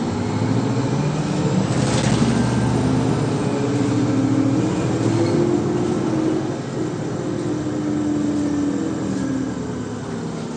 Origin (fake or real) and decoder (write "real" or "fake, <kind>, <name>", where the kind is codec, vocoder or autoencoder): real